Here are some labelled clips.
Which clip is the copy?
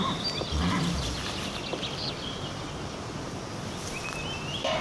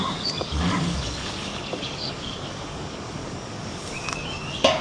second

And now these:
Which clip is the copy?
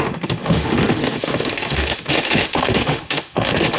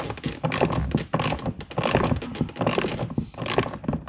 first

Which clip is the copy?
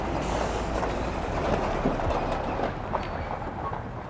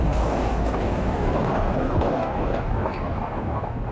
second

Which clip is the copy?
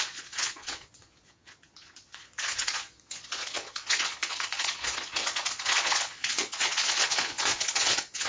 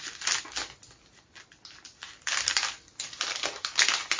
first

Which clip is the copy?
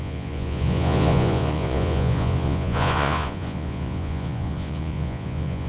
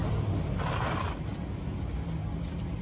first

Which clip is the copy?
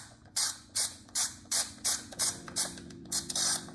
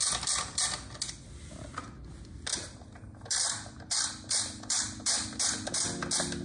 first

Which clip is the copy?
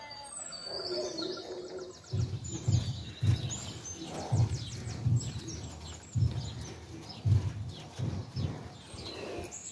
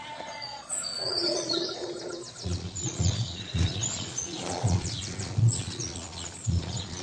second